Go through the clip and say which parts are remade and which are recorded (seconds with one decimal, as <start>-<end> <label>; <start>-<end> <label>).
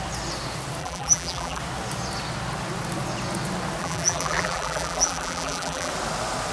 0.0-0.8 recorded; 0.8-1.6 remade; 1.6-3.8 recorded; 3.8-5.9 remade; 5.9-6.5 recorded